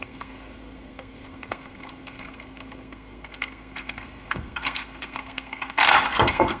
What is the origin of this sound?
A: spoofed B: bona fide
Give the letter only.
A